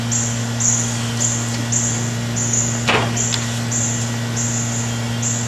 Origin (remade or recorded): recorded